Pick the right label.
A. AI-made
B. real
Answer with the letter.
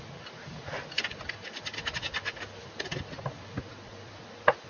B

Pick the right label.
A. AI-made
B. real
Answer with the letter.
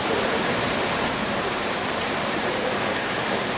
A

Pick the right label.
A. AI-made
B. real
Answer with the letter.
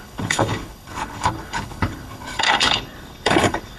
A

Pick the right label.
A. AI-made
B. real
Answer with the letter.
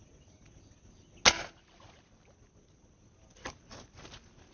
B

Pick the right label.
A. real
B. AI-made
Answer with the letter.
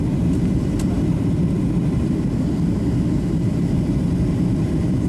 B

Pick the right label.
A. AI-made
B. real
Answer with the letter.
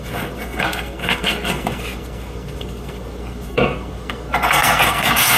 A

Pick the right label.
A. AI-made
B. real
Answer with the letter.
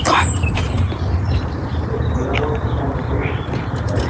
A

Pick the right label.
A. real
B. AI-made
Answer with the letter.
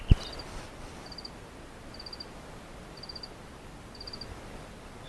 A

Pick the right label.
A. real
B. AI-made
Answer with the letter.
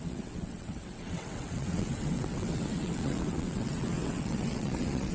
B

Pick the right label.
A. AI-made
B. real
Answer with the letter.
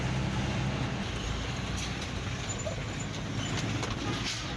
B